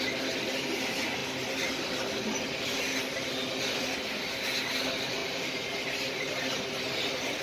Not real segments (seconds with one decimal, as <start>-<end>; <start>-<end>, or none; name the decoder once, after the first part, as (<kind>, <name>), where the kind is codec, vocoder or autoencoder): 5.2-5.8 (vocoder, BigVGAN v2)